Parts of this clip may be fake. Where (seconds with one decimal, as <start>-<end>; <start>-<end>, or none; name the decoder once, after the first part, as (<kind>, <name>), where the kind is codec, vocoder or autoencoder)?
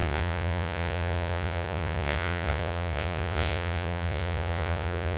0.0-5.2 (vocoder, Vocos)